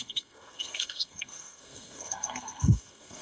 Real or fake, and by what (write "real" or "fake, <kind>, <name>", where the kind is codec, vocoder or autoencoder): fake, codec, SNAC